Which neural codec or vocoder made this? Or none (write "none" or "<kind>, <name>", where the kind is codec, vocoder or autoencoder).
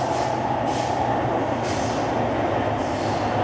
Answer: none